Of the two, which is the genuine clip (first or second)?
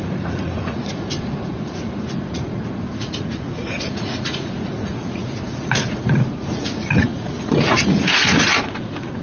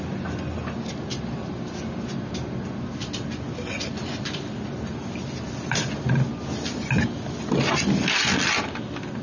second